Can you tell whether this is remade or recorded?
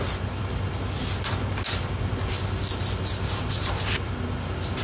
recorded